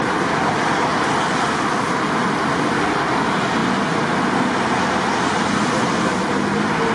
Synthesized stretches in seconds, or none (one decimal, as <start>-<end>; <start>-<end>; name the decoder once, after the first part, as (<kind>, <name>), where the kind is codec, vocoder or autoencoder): none